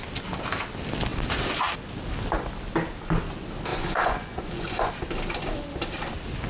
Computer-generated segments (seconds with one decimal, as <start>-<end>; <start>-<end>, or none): 3.7-4.9